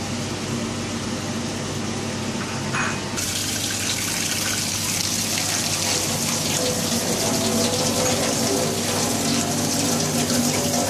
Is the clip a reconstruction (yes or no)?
no